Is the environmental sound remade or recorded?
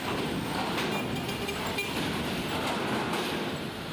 recorded